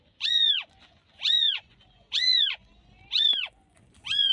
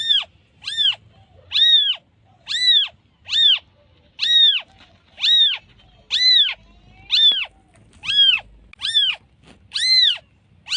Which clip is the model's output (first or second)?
first